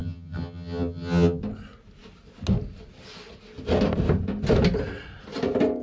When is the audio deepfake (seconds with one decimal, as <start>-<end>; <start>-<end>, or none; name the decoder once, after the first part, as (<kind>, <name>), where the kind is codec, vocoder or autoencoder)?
0.0-1.4 (vocoder, HiFi-GAN)